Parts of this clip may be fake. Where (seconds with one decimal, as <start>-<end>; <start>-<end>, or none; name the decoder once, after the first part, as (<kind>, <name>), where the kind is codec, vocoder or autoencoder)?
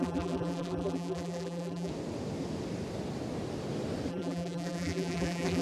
0.0-1.9 (vocoder, BigVGAN v2); 4.1-5.6